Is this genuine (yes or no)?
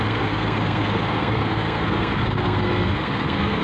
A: no